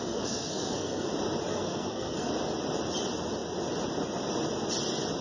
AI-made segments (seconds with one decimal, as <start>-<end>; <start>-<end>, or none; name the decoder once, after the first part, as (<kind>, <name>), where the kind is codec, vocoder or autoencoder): 0.0-1.1 (codec, SNAC); 1.5-2.3